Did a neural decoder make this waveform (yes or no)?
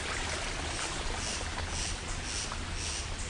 no